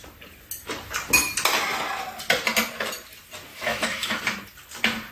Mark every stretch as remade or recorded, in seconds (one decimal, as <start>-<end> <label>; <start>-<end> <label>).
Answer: 0.0-3.5 recorded; 3.5-4.2 remade; 4.2-5.1 recorded